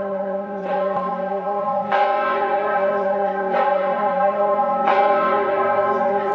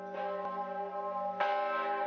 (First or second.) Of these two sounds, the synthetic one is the first